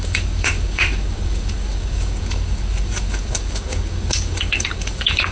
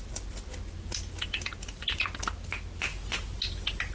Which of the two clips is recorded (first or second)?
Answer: second